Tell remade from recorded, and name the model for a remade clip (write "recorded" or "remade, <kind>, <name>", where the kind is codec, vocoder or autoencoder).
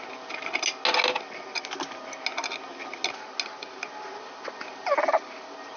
recorded